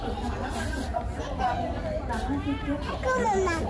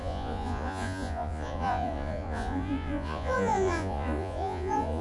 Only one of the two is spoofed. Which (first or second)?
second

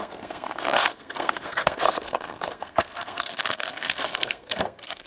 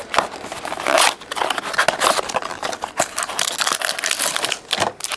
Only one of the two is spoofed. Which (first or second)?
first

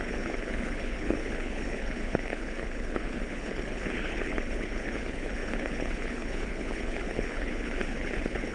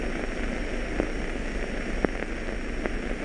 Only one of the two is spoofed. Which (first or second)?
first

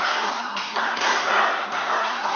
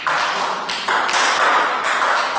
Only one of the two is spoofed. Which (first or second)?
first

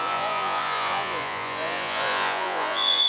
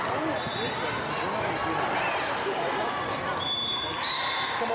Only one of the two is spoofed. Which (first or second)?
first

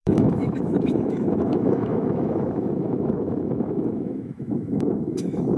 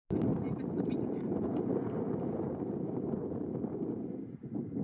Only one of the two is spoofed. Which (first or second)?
first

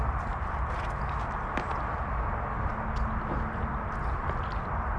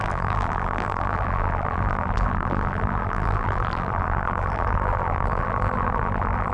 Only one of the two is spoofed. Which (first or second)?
second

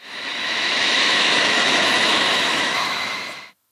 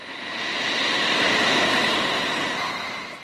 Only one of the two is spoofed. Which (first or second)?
first